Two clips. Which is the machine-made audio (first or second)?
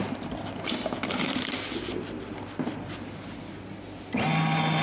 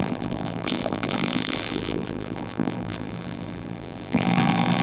second